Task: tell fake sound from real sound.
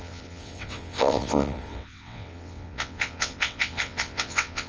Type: fake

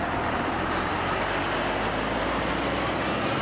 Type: real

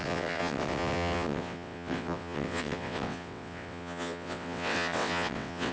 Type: fake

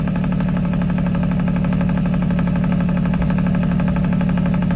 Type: real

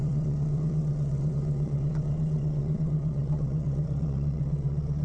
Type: fake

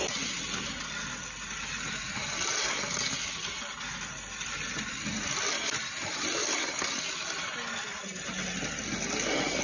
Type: real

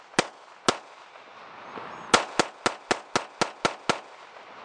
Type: real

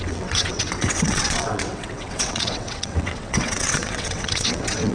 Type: fake